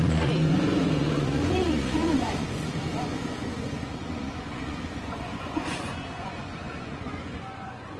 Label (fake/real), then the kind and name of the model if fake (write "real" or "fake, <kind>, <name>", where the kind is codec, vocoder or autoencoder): fake, vocoder, Vocos